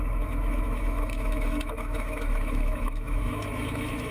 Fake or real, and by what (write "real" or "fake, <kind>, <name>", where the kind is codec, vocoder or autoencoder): fake, autoencoder, DAC-VAE